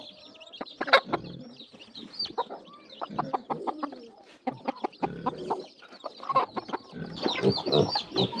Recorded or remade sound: recorded